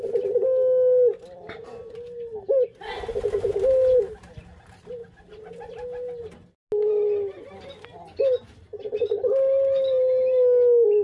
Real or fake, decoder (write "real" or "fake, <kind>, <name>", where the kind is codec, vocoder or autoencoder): real